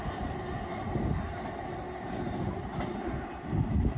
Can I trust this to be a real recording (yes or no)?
yes